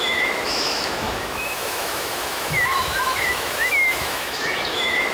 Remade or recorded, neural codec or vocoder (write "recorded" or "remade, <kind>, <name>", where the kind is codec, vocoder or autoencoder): remade, autoencoder, DAC-VAE